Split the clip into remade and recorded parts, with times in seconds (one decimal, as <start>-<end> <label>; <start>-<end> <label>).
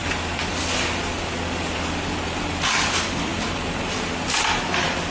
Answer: 0.0-5.1 recorded